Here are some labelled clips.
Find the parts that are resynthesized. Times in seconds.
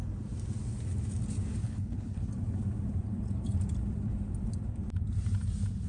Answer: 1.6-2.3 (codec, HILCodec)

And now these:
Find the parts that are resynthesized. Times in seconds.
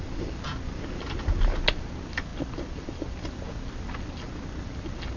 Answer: none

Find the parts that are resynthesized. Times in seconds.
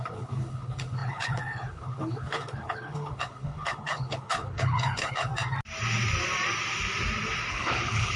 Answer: 0.0-5.3 (codec, HILCodec); 7.5-8.2